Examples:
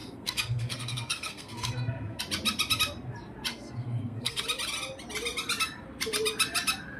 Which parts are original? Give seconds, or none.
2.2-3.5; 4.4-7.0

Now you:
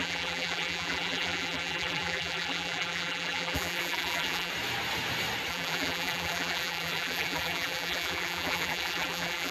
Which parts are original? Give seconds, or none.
4.5-5.5

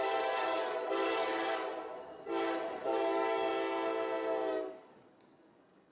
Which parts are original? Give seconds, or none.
1.7-2.8; 3.5-4.5

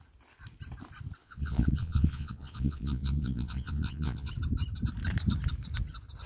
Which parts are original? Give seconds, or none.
0.0-1.2; 4.3-6.3